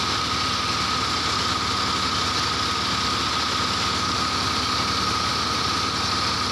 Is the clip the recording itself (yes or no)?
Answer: yes